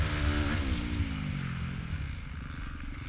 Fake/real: real